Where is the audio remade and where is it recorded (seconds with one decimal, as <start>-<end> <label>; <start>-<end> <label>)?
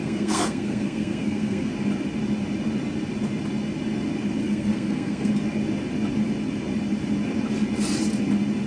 0.0-1.7 remade; 1.7-4.4 recorded; 4.4-5.3 remade; 5.3-8.7 recorded